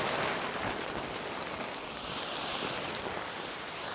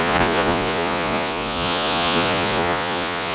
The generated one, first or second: second